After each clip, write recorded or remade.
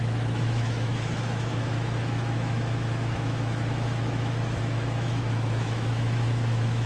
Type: remade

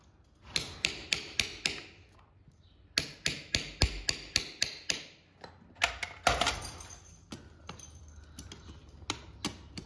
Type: recorded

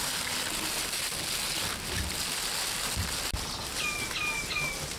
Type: recorded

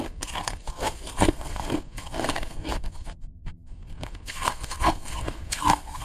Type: remade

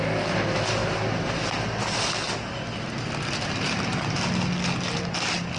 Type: recorded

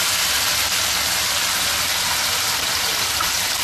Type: recorded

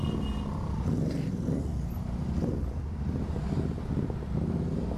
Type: recorded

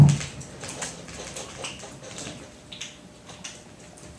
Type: recorded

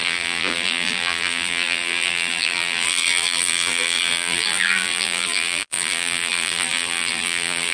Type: remade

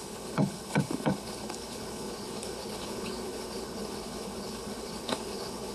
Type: remade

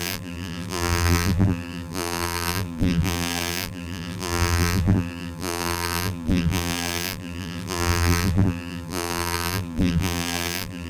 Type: remade